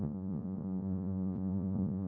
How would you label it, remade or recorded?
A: remade